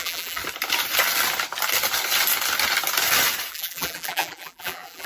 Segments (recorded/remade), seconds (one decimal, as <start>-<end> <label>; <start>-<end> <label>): 0.0-0.4 remade; 0.4-3.5 recorded; 3.5-5.1 remade